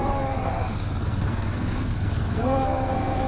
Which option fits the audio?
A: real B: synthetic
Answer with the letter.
B